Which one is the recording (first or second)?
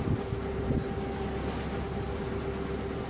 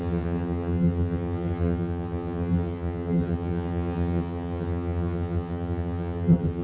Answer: first